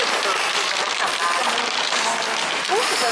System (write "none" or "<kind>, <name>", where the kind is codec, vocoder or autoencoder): none